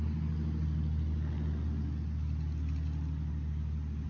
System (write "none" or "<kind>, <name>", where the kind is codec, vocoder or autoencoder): none